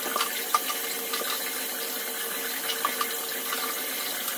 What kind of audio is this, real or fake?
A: real